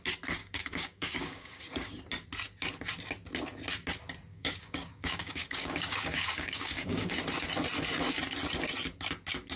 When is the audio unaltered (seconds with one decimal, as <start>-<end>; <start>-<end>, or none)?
0.0-0.4; 1.6-4.3; 7.1-9.6